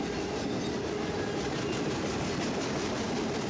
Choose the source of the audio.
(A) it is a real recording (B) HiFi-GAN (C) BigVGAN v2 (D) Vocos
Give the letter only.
A